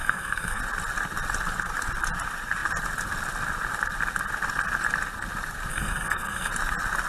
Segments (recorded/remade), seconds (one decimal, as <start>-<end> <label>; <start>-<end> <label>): 0.0-0.6 remade; 0.6-5.7 recorded; 5.7-6.5 remade; 6.5-7.1 recorded